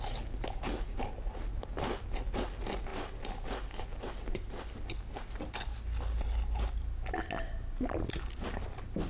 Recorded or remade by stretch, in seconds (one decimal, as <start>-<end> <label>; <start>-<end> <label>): 0.0-9.1 recorded

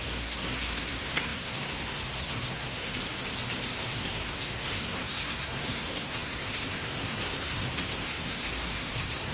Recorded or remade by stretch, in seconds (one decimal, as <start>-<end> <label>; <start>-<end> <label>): 0.0-2.9 remade; 2.9-3.8 recorded; 3.8-9.3 remade